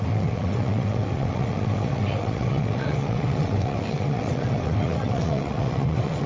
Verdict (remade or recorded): remade